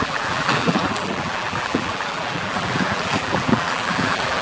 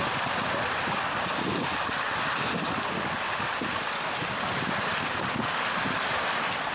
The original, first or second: second